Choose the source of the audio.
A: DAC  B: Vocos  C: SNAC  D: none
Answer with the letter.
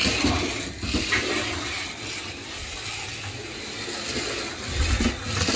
D